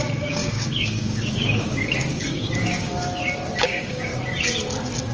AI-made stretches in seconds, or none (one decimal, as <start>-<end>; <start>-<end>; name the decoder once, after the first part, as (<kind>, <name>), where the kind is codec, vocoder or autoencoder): 0.0-2.9 (codec, DAC); 3.6-4.1

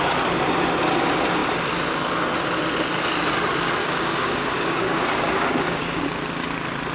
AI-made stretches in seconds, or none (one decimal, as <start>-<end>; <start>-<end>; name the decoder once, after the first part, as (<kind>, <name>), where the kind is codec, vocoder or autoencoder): 3.8-6.0 (codec, DAC)

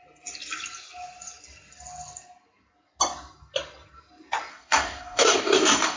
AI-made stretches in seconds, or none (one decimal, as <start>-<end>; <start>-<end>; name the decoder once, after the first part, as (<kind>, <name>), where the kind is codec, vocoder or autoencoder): 4.5-6.0 (codec, DAC)

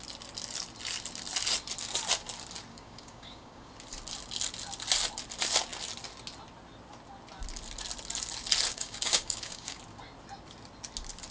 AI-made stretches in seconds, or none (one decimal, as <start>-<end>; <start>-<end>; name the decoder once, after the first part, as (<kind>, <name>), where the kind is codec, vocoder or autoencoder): 2.7-3.7 (codec, DAC); 8.7-9.8

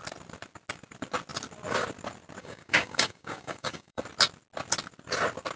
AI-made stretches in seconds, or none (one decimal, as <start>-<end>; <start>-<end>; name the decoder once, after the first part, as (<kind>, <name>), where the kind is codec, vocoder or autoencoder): 2.4-4.0 (codec, DAC)